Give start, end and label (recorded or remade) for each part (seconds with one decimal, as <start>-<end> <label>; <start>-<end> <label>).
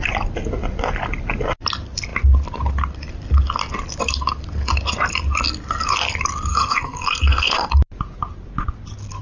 0.0-6.5 recorded; 6.5-7.7 remade; 7.7-9.2 recorded